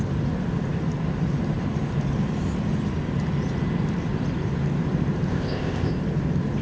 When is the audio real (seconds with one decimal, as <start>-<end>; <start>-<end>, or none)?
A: 0.0-5.3; 5.9-6.6